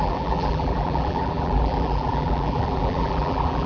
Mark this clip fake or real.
fake